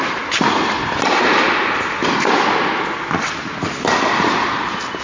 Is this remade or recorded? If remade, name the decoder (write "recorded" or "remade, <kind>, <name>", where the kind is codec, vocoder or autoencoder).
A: recorded